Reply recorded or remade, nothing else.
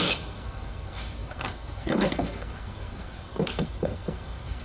remade